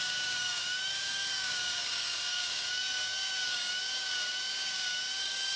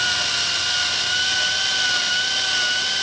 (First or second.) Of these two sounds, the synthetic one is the first